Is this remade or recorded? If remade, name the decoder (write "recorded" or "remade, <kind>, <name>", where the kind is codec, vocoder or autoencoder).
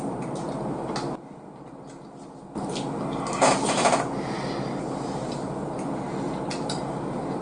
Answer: recorded